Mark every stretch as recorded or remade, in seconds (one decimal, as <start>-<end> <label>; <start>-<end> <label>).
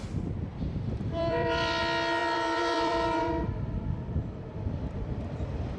0.0-0.5 recorded; 0.5-1.8 remade; 1.8-2.2 recorded; 2.2-5.8 remade